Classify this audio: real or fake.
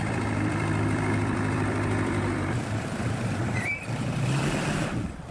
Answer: fake